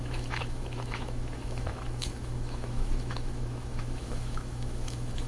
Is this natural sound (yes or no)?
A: no